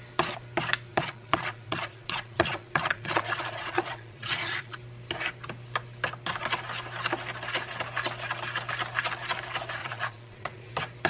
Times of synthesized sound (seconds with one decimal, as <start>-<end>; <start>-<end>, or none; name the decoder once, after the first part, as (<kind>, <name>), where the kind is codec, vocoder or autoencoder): 0.9-4.8 (vocoder, Vocos); 9.8-10.7